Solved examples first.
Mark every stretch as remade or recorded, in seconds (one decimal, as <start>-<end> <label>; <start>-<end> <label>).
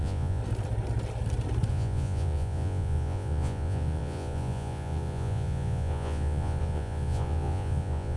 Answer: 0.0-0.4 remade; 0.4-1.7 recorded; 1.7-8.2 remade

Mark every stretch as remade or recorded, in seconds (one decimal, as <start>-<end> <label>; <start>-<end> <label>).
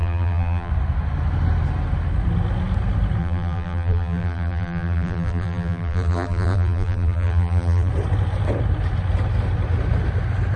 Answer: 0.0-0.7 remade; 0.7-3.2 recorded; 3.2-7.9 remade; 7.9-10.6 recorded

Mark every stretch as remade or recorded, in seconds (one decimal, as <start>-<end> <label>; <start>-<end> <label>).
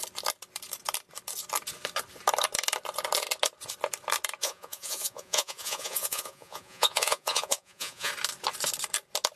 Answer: 0.0-4.4 recorded; 4.4-8.1 remade; 8.1-9.4 recorded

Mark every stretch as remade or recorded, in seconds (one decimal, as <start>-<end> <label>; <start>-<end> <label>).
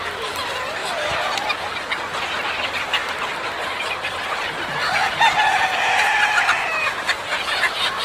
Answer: 0.0-0.8 remade; 0.8-2.1 recorded; 2.1-3.0 remade; 3.0-3.9 recorded; 3.9-8.0 remade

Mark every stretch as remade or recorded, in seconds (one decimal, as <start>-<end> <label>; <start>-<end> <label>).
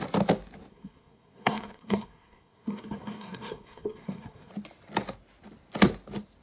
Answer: 0.0-0.7 recorded; 0.7-4.5 remade; 4.5-6.4 recorded